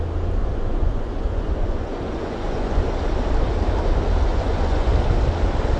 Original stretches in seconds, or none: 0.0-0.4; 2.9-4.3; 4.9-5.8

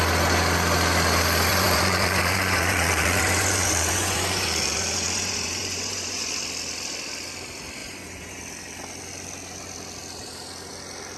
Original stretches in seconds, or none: 0.0-1.5; 6.4-7.8; 8.4-11.2

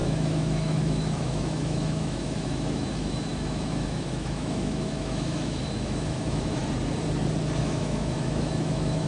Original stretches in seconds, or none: 6.6-7.6

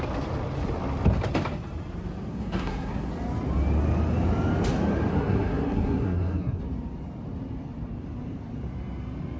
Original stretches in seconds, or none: 0.0-2.3; 3.1-5.1; 6.6-9.4

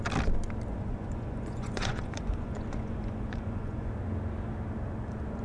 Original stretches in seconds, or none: 0.0-0.7; 3.9-5.4

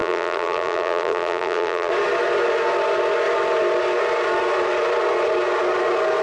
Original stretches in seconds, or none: 1.9-6.2

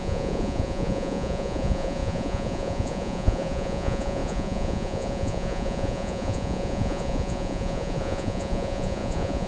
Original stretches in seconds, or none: none

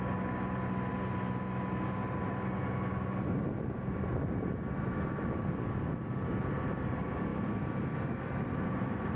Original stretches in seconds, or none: 0.0-7.3; 8.5-9.2